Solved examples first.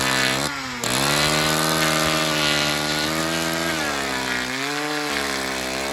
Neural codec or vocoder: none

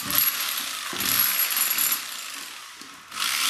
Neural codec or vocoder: none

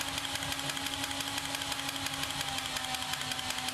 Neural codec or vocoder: none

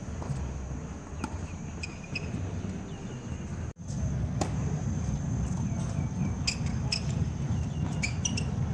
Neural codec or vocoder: none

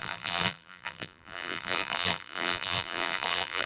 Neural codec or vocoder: vocoder, BigVGAN v2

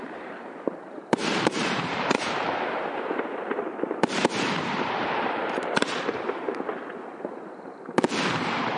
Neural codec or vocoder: vocoder, BigVGAN v2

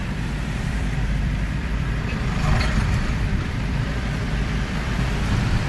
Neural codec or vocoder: vocoder, BigVGAN v2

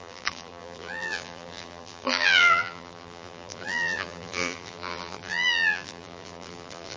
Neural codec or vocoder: vocoder, BigVGAN v2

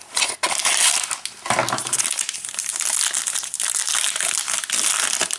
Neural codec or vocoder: none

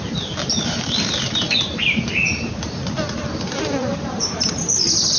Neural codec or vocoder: vocoder, BigVGAN v2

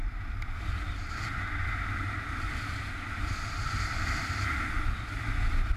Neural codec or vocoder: none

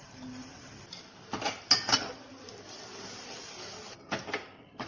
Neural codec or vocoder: none